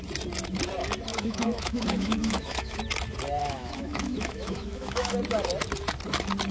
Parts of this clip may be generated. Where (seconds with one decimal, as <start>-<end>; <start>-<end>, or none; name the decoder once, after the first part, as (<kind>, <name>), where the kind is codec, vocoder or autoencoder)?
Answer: 1.1-2.8 (autoencoder, DAC-VAE); 3.4-5.1